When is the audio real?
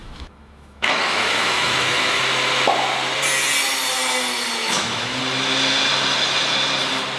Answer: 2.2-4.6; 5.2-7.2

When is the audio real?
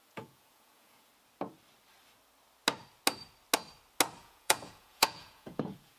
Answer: 1.1-4.2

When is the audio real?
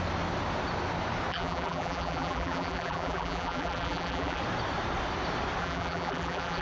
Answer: 0.0-1.3; 4.4-5.6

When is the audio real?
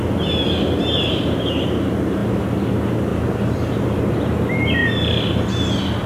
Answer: 0.0-3.1; 4.0-6.1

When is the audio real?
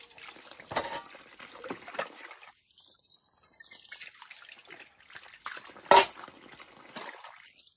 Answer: 0.0-7.8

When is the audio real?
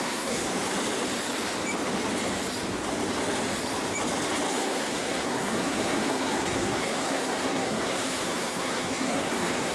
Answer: 0.5-4.5